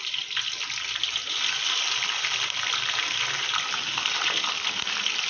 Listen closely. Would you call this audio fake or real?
real